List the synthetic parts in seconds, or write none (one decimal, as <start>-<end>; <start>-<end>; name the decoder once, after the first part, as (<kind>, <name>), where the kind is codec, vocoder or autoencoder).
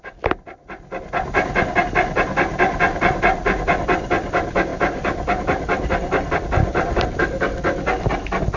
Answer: 4.7-6.3 (vocoder, BigVGAN v2); 6.7-7.2